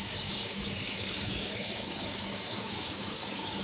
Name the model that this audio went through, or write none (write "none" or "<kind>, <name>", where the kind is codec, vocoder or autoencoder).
codec, DAC